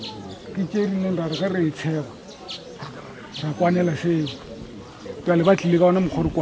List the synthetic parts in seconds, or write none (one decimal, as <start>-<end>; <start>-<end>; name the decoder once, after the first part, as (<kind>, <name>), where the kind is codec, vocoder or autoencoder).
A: none